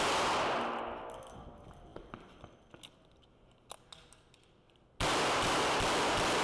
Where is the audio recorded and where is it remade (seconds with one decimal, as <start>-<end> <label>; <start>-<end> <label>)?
0.0-6.4 recorded